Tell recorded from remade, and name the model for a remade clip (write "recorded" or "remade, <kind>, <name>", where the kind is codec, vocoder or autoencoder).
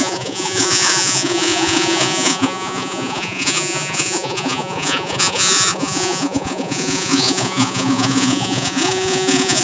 remade, vocoder, Vocos